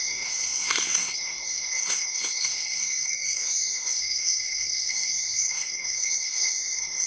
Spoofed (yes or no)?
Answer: yes